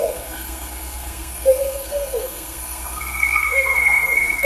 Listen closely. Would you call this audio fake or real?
fake